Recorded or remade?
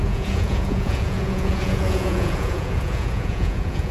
remade